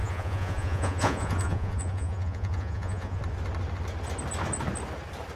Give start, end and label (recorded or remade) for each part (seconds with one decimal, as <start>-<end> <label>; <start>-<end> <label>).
0.0-3.2 remade; 3.2-5.4 recorded